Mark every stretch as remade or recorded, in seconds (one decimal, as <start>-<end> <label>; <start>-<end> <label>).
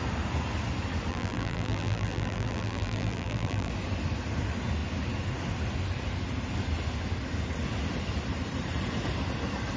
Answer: 0.0-1.1 recorded; 1.1-3.7 remade; 3.7-9.8 recorded